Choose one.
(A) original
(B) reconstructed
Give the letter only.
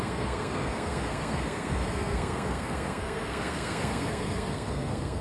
B